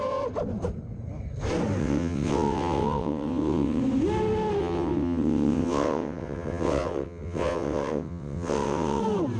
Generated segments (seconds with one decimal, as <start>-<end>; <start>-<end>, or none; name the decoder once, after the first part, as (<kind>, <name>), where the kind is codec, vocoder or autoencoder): 1.8-3.8 (vocoder, WaveNeXt); 4.6-9.0